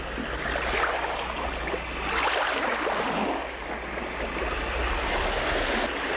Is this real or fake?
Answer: real